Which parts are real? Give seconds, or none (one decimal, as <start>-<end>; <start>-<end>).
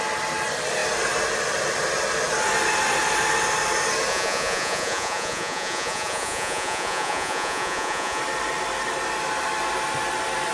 0.0-4.1; 8.2-10.5